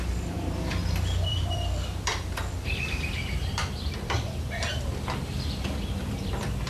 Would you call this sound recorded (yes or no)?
no